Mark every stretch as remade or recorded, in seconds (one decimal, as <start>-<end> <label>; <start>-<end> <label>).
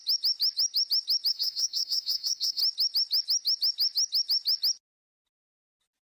0.0-1.3 recorded; 1.3-2.6 remade; 2.6-6.1 recorded